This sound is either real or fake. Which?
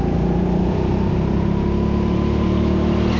real